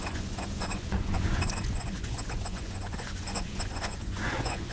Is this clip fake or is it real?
fake